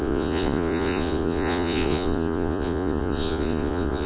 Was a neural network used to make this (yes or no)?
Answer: yes